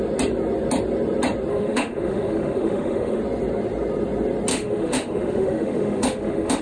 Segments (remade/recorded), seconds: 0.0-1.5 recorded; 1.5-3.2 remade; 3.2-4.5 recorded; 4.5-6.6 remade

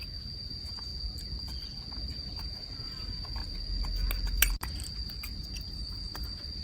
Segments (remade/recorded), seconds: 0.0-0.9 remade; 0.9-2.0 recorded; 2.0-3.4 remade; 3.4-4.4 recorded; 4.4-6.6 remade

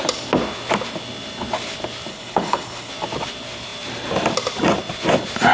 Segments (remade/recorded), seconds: 0.0-2.1 recorded; 2.1-2.9 remade; 2.9-5.5 recorded